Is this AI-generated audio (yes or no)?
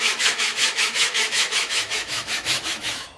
yes